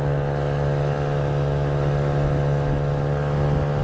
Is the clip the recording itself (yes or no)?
yes